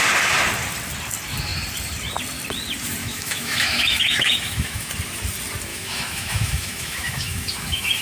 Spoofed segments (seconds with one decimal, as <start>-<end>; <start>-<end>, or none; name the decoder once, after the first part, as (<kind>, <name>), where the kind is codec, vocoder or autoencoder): 3.0-4.9 (autoencoder, DAC-VAE); 5.7-8.0